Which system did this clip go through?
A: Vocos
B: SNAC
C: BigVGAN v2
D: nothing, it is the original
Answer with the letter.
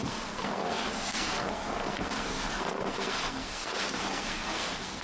B